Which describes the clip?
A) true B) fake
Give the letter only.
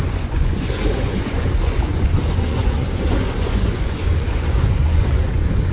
B